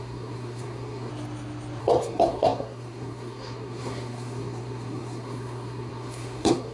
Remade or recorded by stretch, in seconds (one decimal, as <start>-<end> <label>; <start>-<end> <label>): 0.0-1.1 remade; 1.1-1.8 recorded; 1.8-6.7 remade